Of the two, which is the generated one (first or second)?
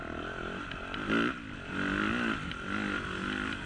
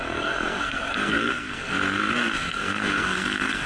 second